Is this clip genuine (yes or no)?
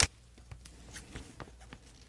yes